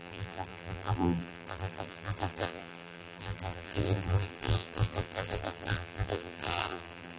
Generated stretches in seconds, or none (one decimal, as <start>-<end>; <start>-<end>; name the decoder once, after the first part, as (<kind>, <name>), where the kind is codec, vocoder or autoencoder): 0.0-7.2 (vocoder, BigVGAN v2)